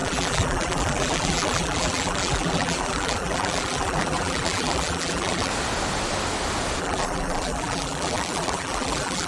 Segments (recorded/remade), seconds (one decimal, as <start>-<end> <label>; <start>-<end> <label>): 0.0-5.5 remade; 5.5-6.8 recorded; 6.8-9.3 remade